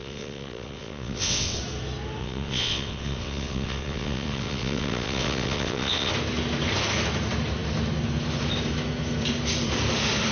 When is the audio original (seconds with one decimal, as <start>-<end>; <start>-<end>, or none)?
1.6-2.2; 6.1-10.3